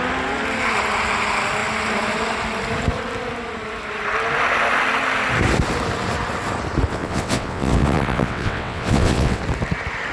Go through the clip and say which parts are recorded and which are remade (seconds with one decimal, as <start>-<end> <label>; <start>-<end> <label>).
0.0-6.9 recorded; 6.9-9.4 remade; 9.4-10.1 recorded